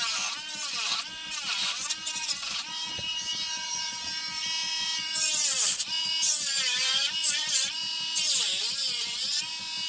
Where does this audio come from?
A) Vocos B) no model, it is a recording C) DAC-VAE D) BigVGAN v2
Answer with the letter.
A